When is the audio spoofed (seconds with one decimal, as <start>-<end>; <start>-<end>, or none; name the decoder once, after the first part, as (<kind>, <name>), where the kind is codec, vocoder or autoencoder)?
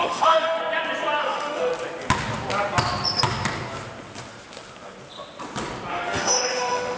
0.0-0.6 (autoencoder, DAC-VAE); 1.2-1.7; 5.9-7.0